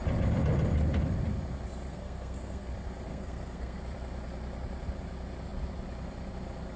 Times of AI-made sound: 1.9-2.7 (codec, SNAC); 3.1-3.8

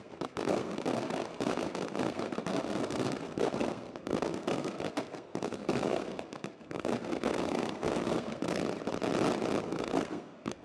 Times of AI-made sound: 0.0-8.6 (codec, SNAC); 9.6-10.6

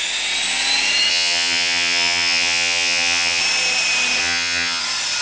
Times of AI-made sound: 1.1-3.4 (vocoder, HiFi-GAN); 4.2-4.8